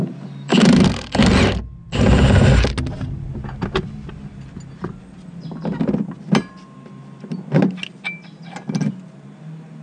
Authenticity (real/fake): real